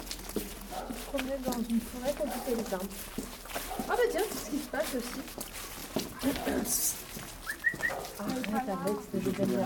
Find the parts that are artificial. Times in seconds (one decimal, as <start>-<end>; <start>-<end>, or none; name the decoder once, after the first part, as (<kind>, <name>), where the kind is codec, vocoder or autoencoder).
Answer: none